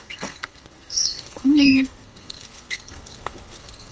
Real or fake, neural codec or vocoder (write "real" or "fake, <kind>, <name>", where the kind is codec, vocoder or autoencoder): fake, codec, SNAC